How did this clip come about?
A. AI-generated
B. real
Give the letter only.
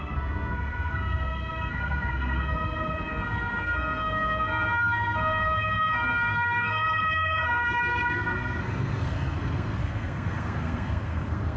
A